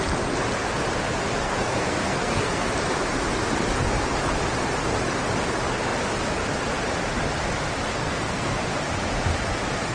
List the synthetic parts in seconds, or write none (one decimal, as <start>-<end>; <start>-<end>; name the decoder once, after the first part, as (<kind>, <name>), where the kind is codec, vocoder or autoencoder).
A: 1.4-2.7 (codec, SNAC); 7.9-8.6

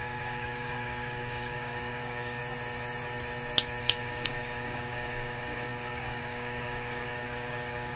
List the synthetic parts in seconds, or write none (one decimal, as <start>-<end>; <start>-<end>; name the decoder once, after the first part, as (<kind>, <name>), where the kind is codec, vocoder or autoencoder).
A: 0.0-2.4 (codec, DAC); 3.8-8.0

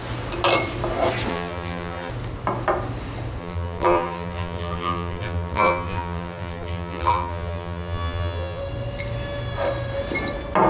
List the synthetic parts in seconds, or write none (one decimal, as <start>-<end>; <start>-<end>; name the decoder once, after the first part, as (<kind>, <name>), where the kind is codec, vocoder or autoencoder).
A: 1.3-2.1 (vocoder, BigVGAN v2); 3.4-8.6

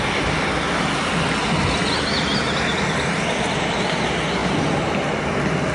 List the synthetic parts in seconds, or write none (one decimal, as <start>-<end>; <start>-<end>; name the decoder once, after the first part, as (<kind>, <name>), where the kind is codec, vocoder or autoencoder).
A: none

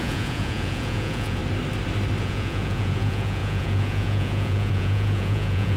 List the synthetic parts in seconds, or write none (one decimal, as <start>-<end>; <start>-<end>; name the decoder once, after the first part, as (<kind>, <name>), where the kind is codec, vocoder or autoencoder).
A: 0.0-1.4 (vocoder, Vocos); 2.2-5.8

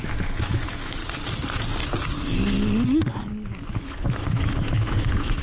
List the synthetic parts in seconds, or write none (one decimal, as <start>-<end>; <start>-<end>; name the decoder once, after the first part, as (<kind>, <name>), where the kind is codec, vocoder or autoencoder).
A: 0.0-1.0 (autoencoder, DAC-VAE); 3.8-5.4